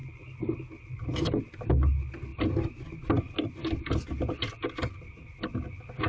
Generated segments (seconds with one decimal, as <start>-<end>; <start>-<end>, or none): none